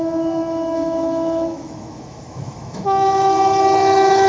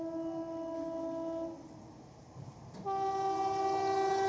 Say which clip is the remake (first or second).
first